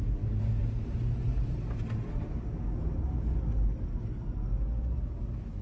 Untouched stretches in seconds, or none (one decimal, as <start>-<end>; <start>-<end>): 0.0-5.6